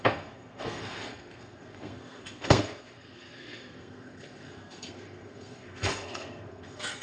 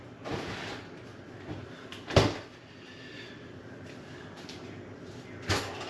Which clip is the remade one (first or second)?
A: first